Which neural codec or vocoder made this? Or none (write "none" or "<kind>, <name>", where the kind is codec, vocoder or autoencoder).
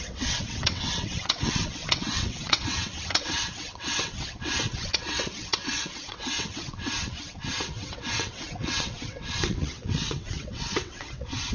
vocoder, WaveNeXt